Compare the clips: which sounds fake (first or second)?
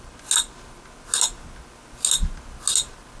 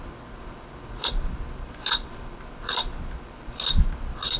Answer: second